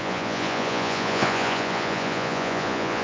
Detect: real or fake fake